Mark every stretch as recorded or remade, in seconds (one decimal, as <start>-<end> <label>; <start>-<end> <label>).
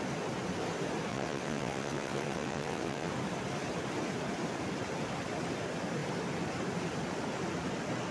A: 0.0-1.1 recorded; 1.1-3.1 remade; 3.1-8.1 recorded